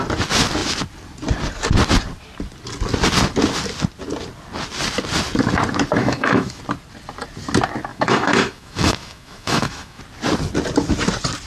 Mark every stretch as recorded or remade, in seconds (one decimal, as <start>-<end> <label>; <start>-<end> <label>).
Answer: 0.0-6.0 recorded; 6.0-6.6 remade; 6.6-7.9 recorded; 7.9-10.0 remade; 10.0-11.5 recorded